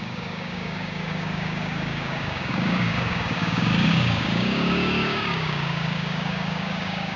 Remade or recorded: remade